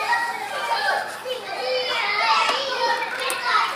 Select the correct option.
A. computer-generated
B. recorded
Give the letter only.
B